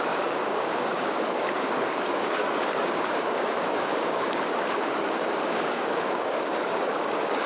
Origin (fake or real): fake